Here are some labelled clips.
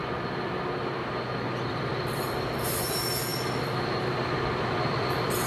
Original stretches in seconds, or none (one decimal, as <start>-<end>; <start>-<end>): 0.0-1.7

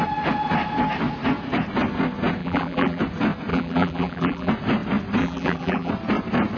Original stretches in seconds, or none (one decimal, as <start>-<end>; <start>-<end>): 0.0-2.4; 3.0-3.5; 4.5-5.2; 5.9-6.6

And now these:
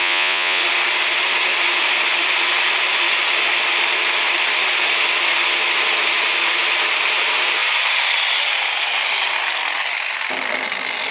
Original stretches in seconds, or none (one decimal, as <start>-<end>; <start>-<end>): 0.6-11.1